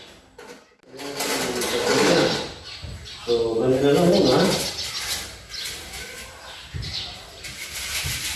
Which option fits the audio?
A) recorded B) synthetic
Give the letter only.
A